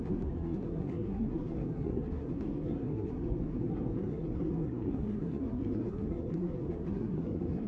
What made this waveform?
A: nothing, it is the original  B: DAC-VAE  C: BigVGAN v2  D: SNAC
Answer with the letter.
D